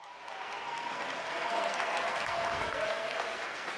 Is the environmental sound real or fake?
fake